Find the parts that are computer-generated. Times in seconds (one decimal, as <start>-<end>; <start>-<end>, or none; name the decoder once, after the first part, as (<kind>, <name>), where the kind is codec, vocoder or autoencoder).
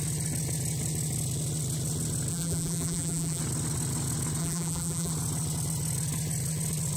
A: 2.3-3.4 (vocoder, BigVGAN v2); 4.4-5.1